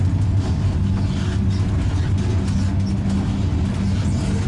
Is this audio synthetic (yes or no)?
no